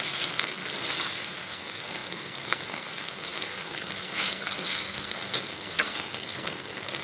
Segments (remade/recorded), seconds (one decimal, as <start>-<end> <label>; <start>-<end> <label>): 0.0-0.6 remade; 0.6-1.2 recorded; 1.2-7.0 remade